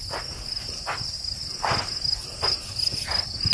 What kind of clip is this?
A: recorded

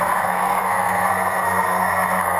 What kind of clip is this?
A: remade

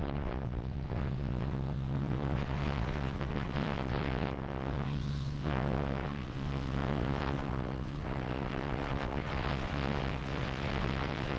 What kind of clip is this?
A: remade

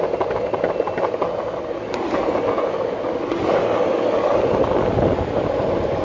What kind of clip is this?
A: recorded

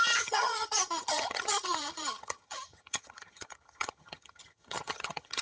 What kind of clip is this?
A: remade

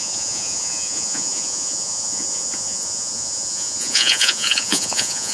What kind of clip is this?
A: remade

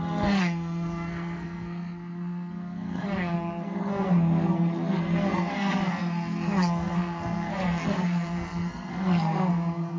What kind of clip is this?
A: remade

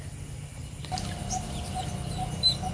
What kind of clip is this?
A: recorded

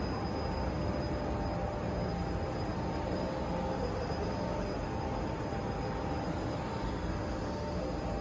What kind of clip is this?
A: recorded